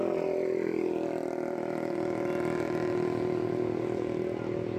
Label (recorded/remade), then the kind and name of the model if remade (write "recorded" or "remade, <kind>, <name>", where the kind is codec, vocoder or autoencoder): recorded